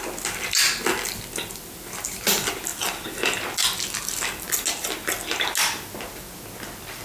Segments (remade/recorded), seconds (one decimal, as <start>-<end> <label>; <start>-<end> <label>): 0.0-7.0 recorded